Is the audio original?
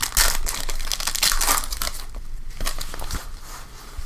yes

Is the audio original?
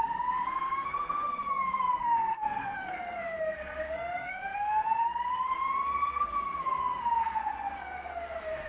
no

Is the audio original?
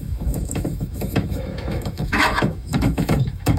no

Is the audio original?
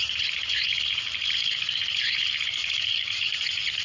no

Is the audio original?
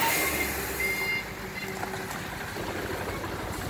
yes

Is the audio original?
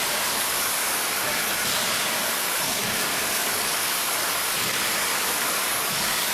no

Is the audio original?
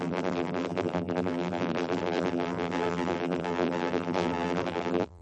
no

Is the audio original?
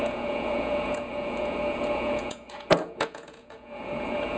no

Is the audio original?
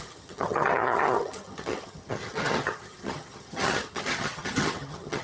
no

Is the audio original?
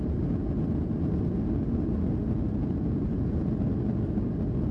yes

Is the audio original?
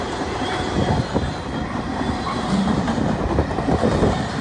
yes